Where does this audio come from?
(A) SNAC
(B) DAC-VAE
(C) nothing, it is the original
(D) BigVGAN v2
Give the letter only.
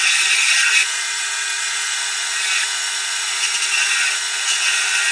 D